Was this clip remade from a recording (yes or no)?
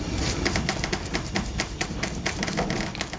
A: no